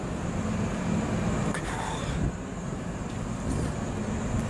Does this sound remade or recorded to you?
remade